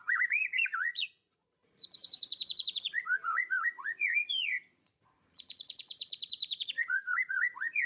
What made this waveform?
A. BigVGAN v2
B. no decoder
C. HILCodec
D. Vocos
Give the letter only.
D